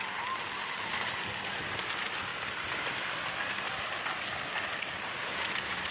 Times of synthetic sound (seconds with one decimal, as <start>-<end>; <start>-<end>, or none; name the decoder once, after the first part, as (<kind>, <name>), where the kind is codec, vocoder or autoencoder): 0.6-1.5 (vocoder, BigVGAN v2); 2.3-3.9

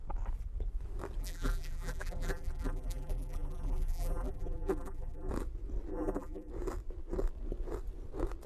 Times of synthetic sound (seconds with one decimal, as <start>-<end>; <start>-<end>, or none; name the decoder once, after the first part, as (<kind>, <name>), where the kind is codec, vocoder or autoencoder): 1.2-5.3 (vocoder, BigVGAN v2); 5.9-6.5